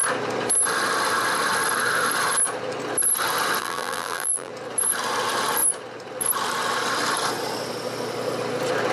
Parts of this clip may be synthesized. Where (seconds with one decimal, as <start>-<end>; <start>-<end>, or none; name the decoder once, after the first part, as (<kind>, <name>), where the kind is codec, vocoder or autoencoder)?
3.6-4.5 (vocoder, BigVGAN v2)